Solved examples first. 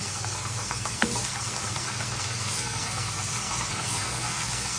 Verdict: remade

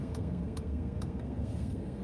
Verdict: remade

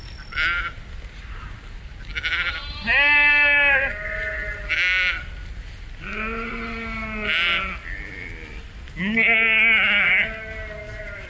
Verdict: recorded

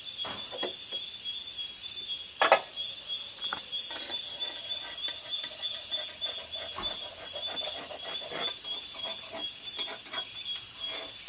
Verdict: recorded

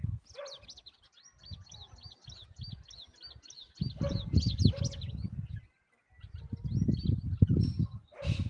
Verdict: recorded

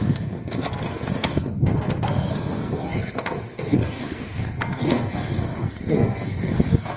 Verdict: remade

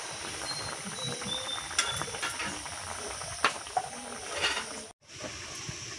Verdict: recorded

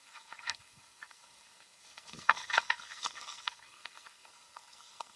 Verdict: remade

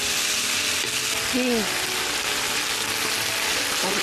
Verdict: recorded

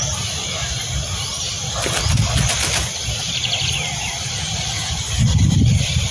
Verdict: recorded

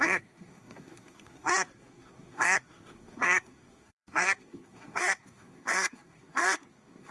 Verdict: remade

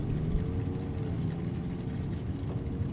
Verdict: recorded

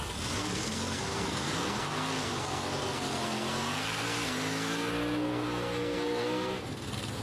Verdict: remade